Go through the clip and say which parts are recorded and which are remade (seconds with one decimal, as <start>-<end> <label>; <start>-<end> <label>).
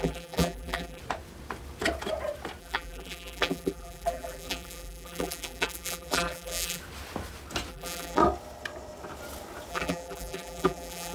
0.0-1.0 remade; 1.0-2.6 recorded; 2.6-6.8 remade; 6.8-7.7 recorded; 7.7-8.2 remade; 8.2-9.7 recorded; 9.7-11.1 remade